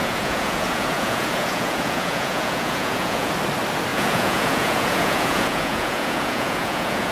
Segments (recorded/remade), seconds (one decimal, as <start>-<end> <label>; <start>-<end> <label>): 0.0-3.3 remade; 3.3-3.9 recorded; 3.9-7.1 remade